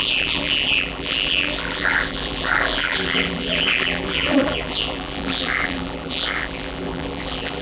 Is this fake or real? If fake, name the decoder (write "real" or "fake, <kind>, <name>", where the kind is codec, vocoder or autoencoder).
fake, vocoder, BigVGAN v2